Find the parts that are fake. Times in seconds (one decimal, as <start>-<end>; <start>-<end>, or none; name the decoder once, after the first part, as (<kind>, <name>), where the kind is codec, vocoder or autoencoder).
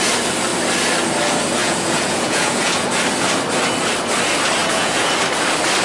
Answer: 1.6-2.9 (vocoder, Vocos); 4.6-5.1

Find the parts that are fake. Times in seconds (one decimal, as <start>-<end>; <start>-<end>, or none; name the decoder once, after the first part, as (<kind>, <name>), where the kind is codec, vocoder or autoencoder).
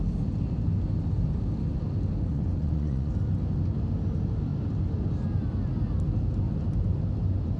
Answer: 2.3-3.1 (vocoder, Vocos)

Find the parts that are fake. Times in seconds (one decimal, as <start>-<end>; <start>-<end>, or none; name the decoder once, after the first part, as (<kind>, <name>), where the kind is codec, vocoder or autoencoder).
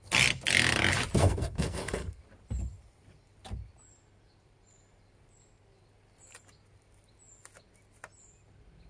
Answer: 1.2-2.2 (codec, SNAC)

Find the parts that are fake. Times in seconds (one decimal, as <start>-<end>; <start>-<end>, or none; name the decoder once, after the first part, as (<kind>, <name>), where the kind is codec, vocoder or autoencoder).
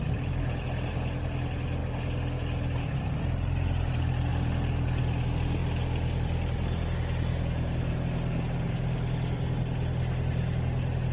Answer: none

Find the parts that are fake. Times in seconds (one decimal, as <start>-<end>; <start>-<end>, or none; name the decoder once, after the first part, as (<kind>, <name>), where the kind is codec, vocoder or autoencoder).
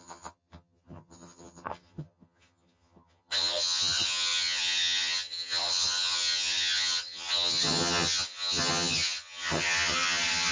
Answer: 0.0-10.5 (vocoder, HiFi-GAN)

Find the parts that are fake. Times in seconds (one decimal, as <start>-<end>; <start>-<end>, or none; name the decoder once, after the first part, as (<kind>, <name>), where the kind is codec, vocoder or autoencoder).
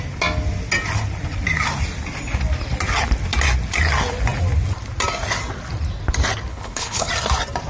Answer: 6.5-7.1 (codec, HILCodec)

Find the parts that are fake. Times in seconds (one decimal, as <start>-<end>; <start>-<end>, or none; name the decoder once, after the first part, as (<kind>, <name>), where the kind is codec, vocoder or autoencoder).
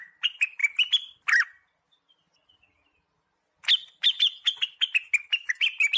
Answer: 5.3-6.0 (vocoder, BigVGAN v2)